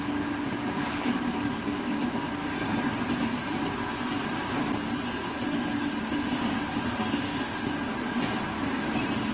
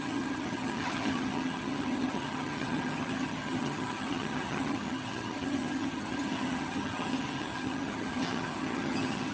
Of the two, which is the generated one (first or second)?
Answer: second